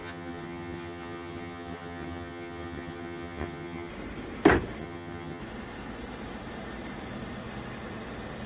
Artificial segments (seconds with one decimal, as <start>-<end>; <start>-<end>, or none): 0.0-3.9; 4.8-5.4